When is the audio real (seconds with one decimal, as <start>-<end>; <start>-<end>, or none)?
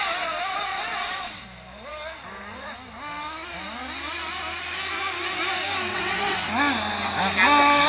0.0-0.7; 1.4-5.9; 6.5-7.9